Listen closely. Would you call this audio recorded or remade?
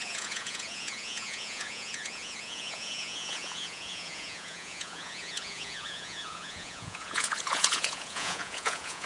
remade